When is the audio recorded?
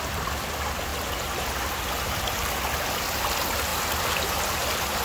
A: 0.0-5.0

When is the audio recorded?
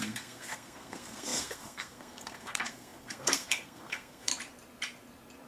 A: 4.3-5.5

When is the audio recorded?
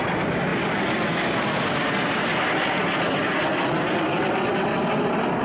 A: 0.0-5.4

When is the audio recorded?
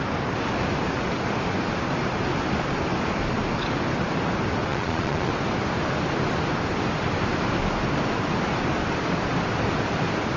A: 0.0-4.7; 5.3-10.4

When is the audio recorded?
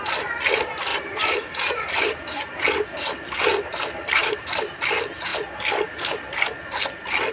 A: 0.0-0.9; 2.6-4.2; 4.7-7.3